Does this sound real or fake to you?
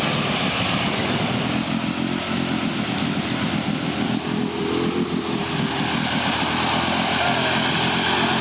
real